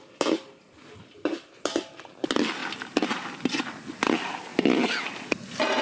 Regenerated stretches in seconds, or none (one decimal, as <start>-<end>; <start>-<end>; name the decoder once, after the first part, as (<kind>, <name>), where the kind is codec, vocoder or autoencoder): none